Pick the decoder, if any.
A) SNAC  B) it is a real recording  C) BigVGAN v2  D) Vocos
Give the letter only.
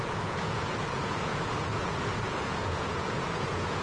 D